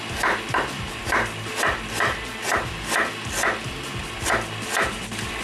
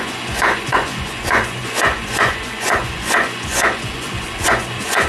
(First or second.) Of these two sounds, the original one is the first